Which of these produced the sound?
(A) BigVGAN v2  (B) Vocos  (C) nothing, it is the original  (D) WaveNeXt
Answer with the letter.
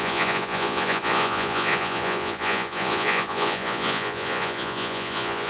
B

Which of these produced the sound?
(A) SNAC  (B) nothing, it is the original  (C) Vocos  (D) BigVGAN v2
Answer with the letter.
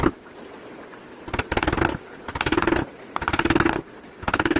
B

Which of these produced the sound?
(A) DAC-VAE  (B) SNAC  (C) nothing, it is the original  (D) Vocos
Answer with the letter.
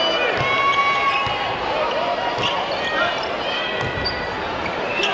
C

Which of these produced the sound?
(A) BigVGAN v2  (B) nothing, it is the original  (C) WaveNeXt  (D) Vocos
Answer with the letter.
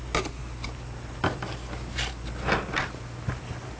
B